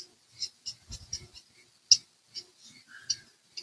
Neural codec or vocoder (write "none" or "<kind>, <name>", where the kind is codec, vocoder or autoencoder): none